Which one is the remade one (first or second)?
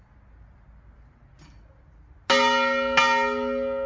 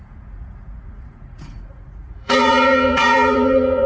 second